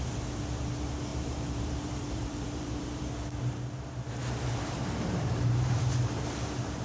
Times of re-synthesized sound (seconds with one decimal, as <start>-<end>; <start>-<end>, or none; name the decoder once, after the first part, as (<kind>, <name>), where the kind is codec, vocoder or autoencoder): 1.1-3.1 (vocoder, BigVGAN v2); 4.2-5.8